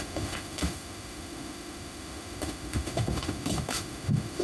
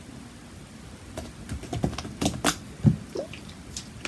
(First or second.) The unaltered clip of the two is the second